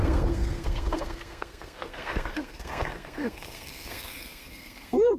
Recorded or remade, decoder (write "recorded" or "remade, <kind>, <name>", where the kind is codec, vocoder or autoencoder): remade, codec, SNAC